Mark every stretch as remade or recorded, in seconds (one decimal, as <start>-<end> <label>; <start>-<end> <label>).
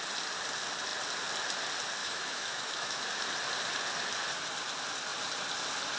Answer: 0.0-2.0 recorded; 2.0-3.0 remade; 3.0-6.0 recorded